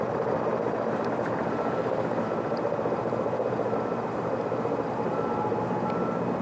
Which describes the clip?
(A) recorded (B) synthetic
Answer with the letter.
A